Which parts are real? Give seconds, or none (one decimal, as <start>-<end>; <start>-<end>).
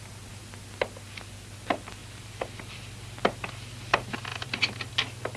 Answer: 0.0-2.0; 2.6-4.3; 4.9-5.4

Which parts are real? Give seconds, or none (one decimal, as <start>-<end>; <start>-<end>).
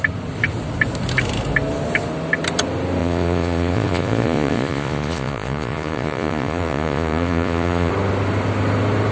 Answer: 0.0-3.0; 7.9-9.1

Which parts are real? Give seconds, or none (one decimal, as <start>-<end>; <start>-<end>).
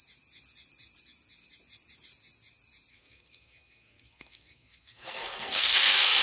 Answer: 0.0-2.9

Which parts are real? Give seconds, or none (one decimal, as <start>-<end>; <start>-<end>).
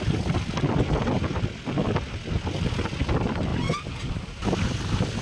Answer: 0.0-5.2